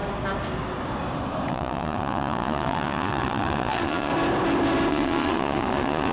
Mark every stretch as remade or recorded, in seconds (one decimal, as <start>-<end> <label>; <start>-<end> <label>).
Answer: 0.0-1.5 recorded; 1.5-4.1 remade; 4.1-4.9 recorded; 4.9-6.1 remade